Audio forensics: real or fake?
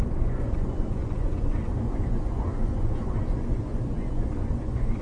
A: fake